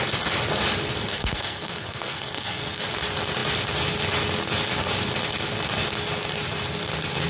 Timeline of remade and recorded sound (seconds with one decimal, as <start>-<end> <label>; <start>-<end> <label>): 0.0-1.1 recorded; 1.1-2.9 remade; 2.9-7.3 recorded